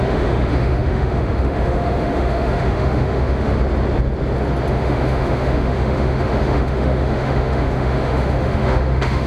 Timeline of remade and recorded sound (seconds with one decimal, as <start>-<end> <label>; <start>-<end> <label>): 0.0-3.5 remade; 3.5-4.7 recorded; 4.7-9.3 remade